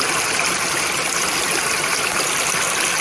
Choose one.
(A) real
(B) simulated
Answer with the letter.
A